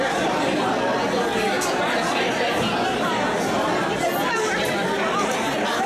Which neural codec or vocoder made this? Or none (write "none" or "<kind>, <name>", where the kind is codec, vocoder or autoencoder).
none